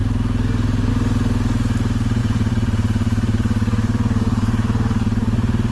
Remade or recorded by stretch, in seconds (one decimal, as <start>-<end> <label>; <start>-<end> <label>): 0.0-0.9 remade; 0.9-2.2 recorded; 2.2-5.7 remade